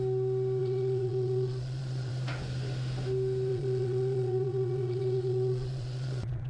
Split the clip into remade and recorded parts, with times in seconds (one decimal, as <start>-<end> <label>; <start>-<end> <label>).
0.0-0.6 recorded; 0.6-2.1 remade; 2.1-3.5 recorded; 3.5-6.5 remade